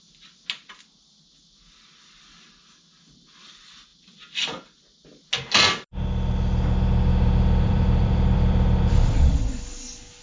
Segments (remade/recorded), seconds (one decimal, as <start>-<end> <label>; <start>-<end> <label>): 0.0-3.9 recorded; 3.9-4.8 remade; 4.8-7.1 recorded; 7.1-9.4 remade; 9.4-10.2 recorded